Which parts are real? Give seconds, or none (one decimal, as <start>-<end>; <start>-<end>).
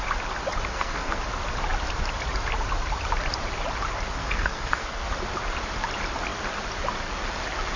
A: 0.0-0.7; 1.2-4.2; 5.1-7.8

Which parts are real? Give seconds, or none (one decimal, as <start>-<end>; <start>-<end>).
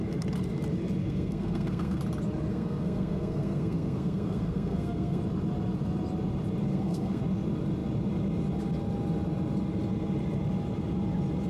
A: 0.0-1.0; 2.0-2.5; 5.2-6.7; 7.2-11.5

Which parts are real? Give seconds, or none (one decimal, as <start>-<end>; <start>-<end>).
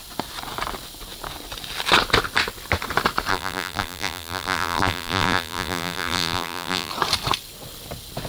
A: 0.0-3.3; 6.9-8.3